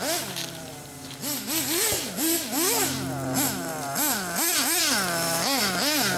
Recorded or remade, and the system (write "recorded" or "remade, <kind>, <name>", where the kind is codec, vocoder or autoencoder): recorded